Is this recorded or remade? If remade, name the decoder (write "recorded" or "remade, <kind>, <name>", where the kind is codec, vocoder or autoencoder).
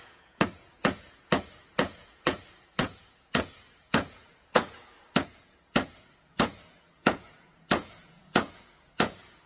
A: remade, vocoder, Vocos